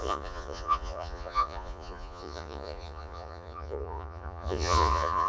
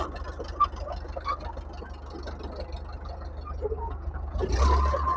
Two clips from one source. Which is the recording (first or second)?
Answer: second